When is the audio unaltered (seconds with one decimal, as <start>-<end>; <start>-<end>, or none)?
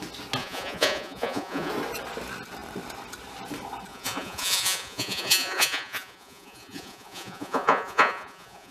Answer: 0.0-0.4; 1.7-3.9